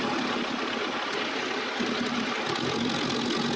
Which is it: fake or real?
real